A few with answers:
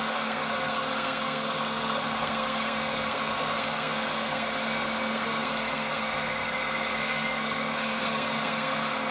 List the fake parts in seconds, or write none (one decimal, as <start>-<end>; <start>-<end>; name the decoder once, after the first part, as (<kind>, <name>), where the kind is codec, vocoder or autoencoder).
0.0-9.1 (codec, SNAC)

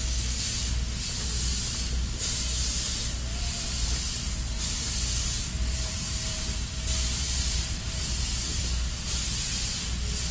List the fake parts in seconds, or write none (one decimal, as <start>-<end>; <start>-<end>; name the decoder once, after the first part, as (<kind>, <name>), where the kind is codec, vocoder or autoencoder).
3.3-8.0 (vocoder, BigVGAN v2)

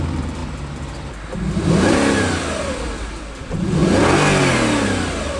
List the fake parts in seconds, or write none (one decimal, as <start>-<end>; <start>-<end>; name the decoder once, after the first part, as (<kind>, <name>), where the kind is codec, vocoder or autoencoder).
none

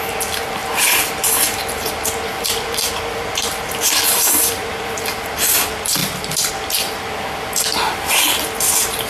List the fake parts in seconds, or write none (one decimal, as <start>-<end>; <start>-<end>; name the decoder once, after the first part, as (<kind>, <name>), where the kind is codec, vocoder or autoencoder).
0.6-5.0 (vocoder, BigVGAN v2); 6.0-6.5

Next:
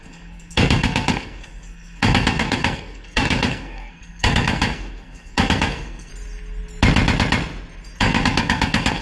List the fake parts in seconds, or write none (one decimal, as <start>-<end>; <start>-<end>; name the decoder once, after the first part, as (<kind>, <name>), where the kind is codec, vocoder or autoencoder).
0.0-6.1 (codec, SNAC); 8.0-9.0

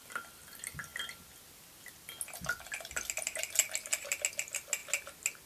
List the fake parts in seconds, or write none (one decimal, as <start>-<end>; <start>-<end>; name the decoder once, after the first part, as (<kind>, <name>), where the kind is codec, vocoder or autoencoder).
none

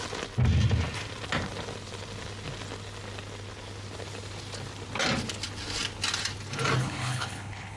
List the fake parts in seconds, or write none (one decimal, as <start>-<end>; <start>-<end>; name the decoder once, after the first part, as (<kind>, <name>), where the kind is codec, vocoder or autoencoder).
6.8-7.8 (codec, HILCodec)